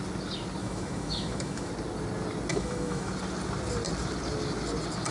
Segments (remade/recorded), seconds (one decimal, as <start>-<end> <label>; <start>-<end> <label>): 0.0-0.6 recorded; 0.6-1.7 remade; 1.7-2.5 recorded; 2.5-3.1 remade; 3.1-5.1 recorded